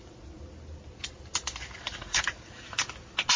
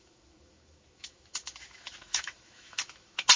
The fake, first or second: second